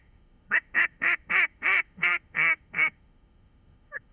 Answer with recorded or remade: remade